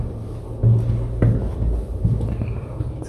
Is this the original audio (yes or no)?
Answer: yes